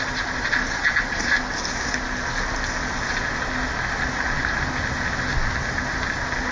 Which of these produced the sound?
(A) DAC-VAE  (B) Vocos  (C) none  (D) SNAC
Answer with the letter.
C